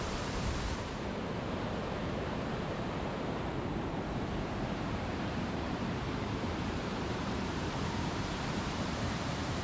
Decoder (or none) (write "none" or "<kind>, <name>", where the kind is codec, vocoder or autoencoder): vocoder, BigVGAN v2